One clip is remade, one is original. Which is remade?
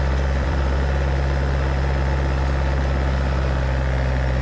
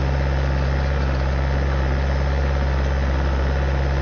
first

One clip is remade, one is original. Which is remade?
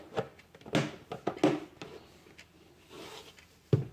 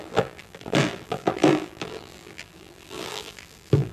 second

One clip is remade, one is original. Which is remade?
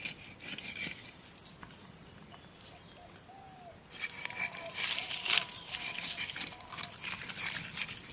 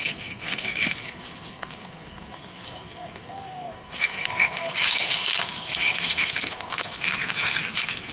second